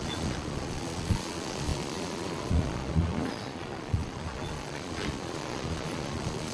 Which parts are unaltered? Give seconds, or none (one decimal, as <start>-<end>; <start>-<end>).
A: none